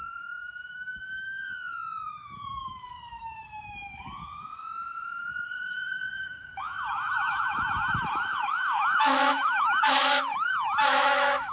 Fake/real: fake